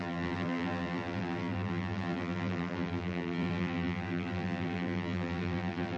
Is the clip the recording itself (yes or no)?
no